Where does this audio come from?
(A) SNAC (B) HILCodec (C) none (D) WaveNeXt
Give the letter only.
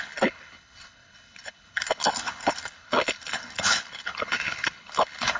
B